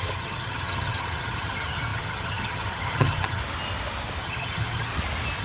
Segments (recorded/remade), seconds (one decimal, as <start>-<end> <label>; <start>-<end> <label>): 0.0-3.4 remade; 3.4-4.2 recorded; 4.2-4.9 remade; 4.9-5.4 recorded